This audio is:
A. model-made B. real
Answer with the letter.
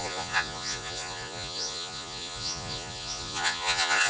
A